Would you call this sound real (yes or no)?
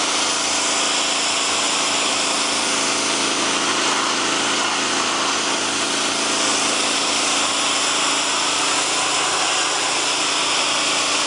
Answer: yes